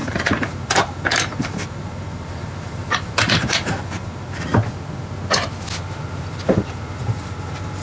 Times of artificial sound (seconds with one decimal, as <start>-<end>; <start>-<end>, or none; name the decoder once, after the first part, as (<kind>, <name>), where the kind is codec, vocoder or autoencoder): 0.0-4.5 (vocoder, BigVGAN v2); 5.9-7.8